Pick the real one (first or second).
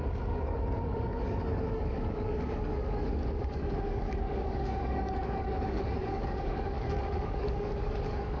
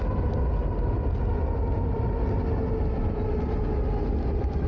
second